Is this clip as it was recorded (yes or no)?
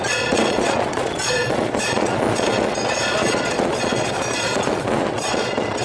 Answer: no